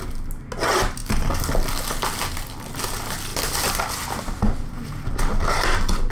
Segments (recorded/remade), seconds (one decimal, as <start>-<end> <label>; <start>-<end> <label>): 0.0-6.1 recorded